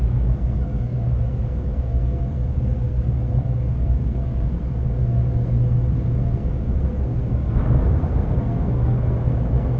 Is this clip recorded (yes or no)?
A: no